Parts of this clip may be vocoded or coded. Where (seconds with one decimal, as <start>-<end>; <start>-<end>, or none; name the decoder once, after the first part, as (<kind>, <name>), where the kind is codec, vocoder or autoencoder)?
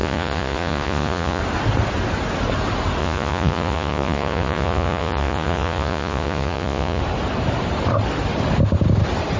0.0-1.4 (vocoder, Vocos); 3.0-7.0